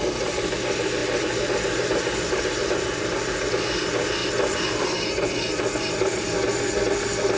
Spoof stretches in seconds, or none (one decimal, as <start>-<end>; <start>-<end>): none

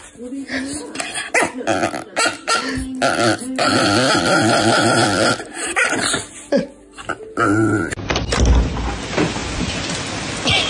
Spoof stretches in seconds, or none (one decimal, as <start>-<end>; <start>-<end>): none

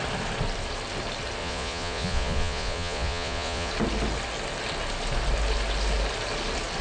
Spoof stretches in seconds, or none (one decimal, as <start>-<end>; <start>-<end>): 1.4-3.7

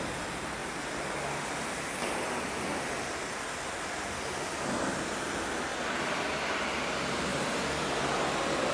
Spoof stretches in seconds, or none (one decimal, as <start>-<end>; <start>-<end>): none

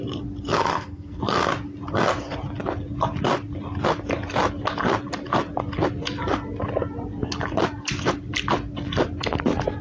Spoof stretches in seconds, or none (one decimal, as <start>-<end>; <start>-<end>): 0.7-1.2

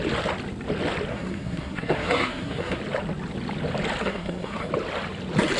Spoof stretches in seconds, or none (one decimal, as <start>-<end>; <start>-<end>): 1.1-2.8; 4.0-4.7

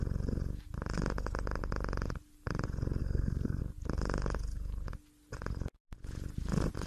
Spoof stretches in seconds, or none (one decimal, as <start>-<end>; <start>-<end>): 3.0-3.6

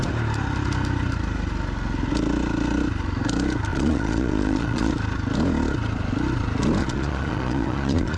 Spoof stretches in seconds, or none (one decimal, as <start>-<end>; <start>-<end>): 3.7-4.9; 6.8-8.2